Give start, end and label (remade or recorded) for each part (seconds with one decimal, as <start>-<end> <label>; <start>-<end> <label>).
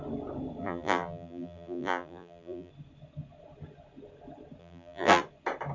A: 0.0-0.6 recorded; 0.6-2.7 remade; 2.7-4.6 recorded; 4.6-5.2 remade; 5.2-5.7 recorded